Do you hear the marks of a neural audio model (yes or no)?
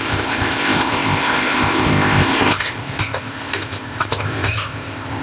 yes